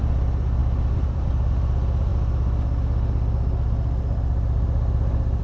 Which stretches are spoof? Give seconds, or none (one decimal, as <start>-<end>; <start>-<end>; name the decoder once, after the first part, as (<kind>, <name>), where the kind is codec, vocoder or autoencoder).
none